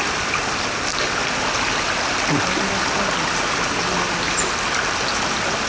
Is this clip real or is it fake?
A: real